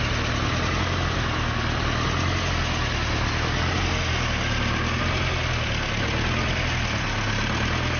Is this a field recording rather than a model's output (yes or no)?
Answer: yes